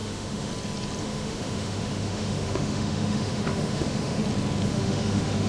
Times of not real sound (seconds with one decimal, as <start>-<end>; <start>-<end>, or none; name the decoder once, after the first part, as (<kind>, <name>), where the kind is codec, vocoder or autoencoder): 0.0-0.5 (autoencoder, DAC-VAE); 1.0-4.2; 4.7-5.5